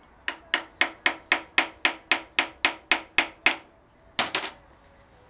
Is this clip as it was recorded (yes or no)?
yes